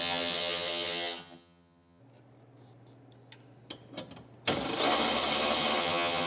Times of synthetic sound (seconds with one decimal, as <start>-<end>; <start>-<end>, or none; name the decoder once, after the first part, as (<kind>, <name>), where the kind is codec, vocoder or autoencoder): 0.0-2.0 (vocoder, HiFi-GAN); 5.8-6.3